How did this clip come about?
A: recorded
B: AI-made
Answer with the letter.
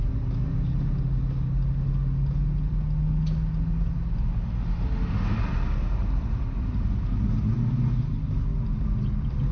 A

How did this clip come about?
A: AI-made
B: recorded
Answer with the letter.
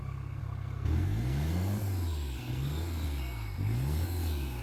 A